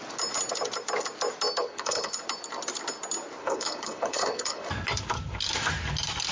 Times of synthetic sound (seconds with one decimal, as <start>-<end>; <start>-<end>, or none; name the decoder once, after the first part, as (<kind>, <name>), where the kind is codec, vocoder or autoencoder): 1.6-2.1 (codec, HILCodec); 3.4-4.7